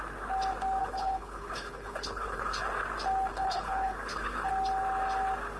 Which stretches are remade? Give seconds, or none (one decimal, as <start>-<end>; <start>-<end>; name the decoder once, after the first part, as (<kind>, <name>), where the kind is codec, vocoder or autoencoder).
0.8-2.6 (codec, HILCodec); 3.3-4.5